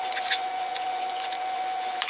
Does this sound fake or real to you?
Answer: fake